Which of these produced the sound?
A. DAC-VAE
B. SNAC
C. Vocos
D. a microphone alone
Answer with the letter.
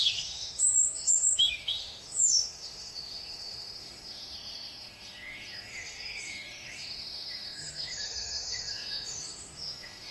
A